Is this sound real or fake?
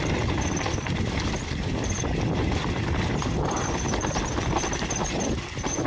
real